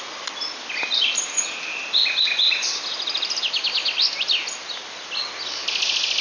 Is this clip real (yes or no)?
yes